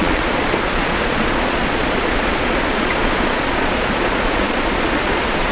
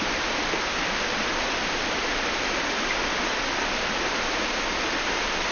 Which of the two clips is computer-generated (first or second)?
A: first